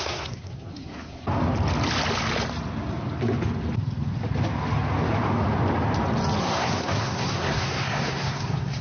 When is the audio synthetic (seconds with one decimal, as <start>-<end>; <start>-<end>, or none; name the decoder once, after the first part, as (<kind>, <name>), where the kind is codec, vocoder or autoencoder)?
0.0-1.2 (codec, SNAC); 6.4-8.8